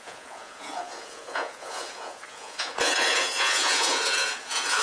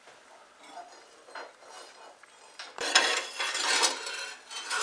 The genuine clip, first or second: second